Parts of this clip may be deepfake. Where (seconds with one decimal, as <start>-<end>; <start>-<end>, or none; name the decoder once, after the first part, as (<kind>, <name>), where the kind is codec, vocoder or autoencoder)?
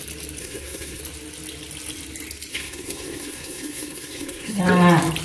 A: 0.4-1.0 (codec, SNAC); 2.5-4.6